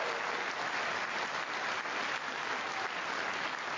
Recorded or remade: recorded